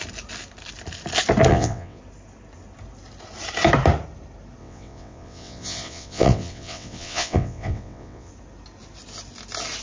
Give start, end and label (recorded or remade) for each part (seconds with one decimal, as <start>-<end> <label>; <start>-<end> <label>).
0.0-1.5 recorded; 1.5-2.0 remade; 2.0-4.6 recorded; 4.6-8.3 remade; 8.3-9.8 recorded